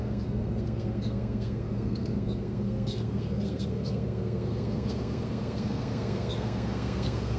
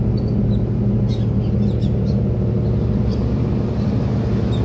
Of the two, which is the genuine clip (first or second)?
second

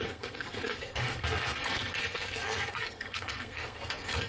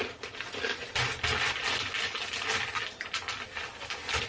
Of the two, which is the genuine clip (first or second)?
second